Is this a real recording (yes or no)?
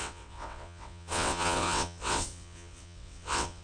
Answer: no